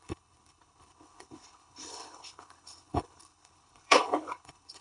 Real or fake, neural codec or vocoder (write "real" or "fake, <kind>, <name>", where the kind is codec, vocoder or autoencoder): fake, codec, HILCodec